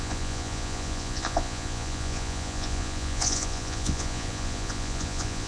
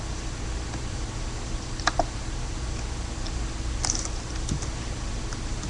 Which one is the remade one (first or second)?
first